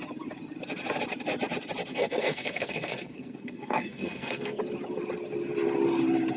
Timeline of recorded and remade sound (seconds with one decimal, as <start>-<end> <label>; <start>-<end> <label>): 0.0-1.9 recorded; 1.9-4.6 remade; 4.6-6.4 recorded